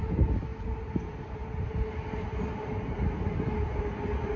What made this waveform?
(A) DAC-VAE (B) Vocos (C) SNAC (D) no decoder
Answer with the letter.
D